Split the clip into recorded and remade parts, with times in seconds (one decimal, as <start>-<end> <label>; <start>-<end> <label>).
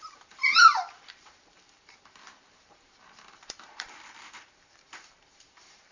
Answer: 0.0-5.9 remade